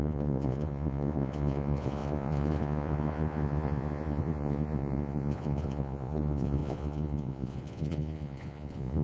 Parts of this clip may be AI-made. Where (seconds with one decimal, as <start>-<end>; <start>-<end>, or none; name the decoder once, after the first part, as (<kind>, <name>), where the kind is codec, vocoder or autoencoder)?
0.0-9.0 (vocoder, Vocos)